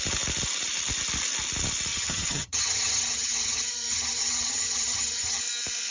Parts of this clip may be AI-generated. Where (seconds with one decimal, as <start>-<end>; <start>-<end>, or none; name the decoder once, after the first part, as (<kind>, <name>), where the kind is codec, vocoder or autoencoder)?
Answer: 1.9-5.4 (vocoder, HiFi-GAN)